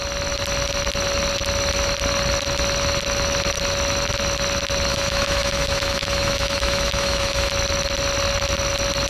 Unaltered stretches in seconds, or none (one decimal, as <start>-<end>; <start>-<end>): 0.0-4.9; 7.5-9.1